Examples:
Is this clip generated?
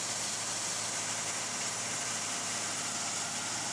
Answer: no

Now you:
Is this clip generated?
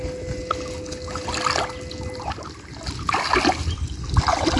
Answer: no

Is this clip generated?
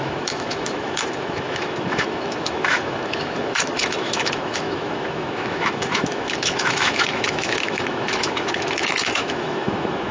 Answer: yes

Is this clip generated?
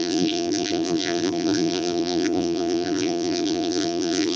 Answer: yes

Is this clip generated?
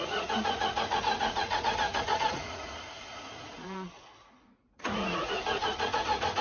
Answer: yes